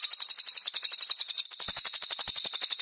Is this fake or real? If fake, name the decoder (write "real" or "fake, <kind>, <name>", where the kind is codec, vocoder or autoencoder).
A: real